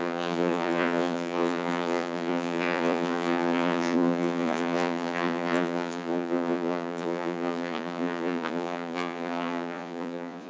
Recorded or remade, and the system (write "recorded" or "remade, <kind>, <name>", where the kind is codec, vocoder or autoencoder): remade, vocoder, Vocos